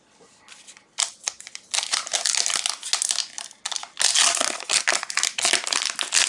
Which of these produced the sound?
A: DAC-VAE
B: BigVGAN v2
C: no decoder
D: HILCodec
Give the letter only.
C